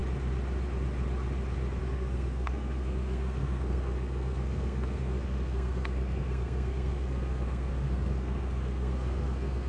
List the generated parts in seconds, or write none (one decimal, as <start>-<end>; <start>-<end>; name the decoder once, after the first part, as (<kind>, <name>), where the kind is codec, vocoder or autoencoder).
1.8-9.7 (codec, SNAC)